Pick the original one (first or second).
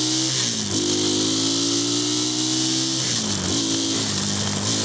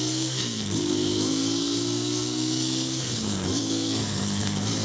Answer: first